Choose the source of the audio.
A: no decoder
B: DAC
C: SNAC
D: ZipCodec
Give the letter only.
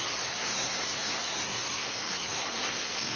C